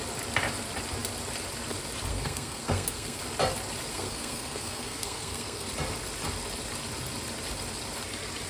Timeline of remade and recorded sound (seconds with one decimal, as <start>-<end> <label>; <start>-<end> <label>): 0.0-2.1 recorded; 2.1-3.2 remade; 3.2-3.9 recorded; 3.9-5.7 remade; 5.7-8.5 recorded